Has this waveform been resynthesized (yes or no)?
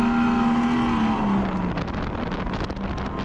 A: no